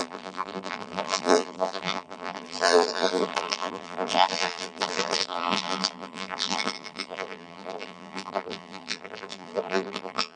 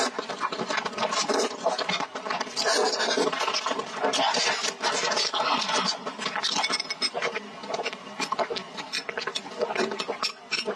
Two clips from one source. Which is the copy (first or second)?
first